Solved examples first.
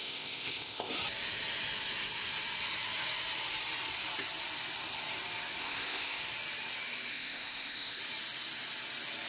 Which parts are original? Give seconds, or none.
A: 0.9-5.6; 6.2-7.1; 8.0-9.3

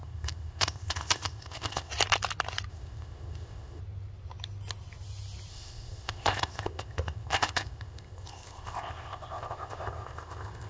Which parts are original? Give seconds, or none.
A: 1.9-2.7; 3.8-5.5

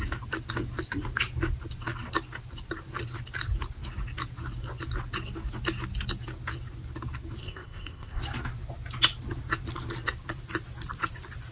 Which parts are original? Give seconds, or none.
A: 0.0-7.4; 8.2-11.5

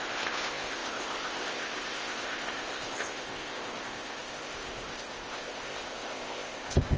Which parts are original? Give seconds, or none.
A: none

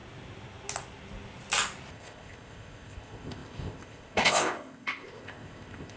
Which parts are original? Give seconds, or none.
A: 0.0-1.9